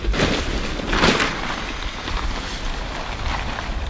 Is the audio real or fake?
fake